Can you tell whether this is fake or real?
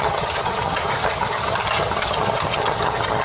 fake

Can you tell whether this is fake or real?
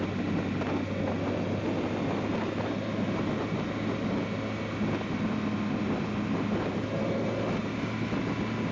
real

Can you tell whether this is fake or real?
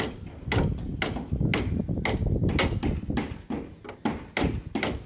real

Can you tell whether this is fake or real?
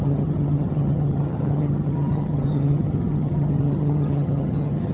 fake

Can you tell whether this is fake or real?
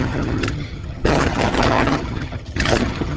fake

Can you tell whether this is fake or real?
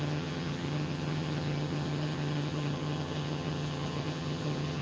fake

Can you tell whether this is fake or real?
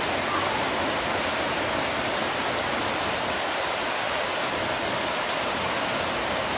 real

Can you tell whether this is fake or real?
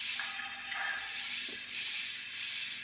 real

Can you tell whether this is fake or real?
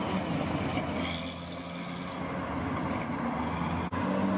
real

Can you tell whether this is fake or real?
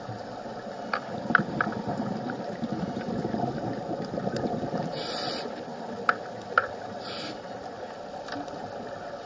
real